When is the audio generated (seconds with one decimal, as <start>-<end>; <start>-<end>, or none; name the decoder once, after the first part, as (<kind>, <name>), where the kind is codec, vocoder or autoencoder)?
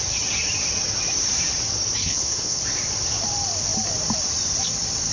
2.0-2.6 (codec, HILCodec)